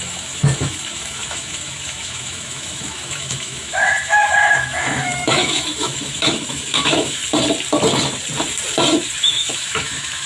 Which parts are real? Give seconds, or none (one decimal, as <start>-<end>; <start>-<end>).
7.2-9.2